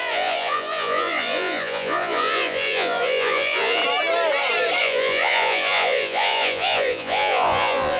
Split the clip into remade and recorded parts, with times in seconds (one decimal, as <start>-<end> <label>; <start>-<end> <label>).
0.0-3.8 remade; 3.8-4.8 recorded; 4.8-8.0 remade